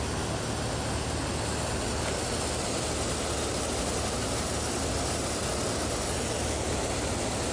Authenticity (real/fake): real